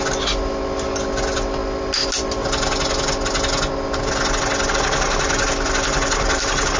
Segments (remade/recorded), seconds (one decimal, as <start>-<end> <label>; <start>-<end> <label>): 0.0-6.8 recorded